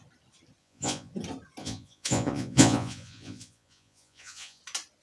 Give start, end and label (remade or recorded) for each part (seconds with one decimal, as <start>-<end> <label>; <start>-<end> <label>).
0.0-0.6 recorded; 0.6-1.1 remade; 1.1-1.6 recorded; 1.6-4.6 remade; 4.6-5.0 recorded